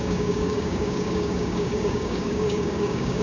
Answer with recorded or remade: remade